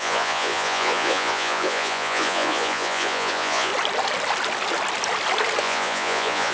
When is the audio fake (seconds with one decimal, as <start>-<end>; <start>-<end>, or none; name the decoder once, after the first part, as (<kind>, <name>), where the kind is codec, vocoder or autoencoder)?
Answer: 0.0-3.7 (vocoder, Vocos); 5.6-6.5